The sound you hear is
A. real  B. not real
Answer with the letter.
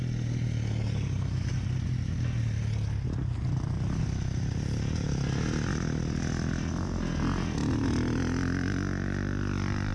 A